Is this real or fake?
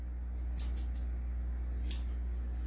real